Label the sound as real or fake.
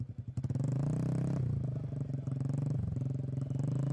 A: real